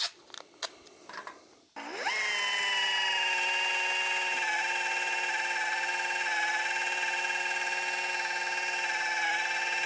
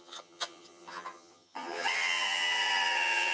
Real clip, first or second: first